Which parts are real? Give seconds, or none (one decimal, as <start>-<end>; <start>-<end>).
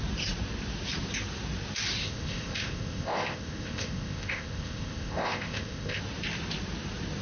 0.0-2.0; 6.0-7.2